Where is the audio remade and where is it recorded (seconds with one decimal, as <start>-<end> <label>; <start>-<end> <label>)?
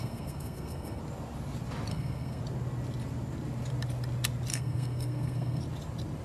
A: 0.0-1.0 remade; 1.0-1.9 recorded; 1.9-2.4 remade; 2.4-4.5 recorded; 4.5-5.6 remade; 5.6-6.2 recorded